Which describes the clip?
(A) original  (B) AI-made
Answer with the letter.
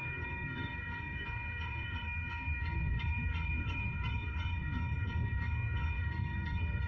B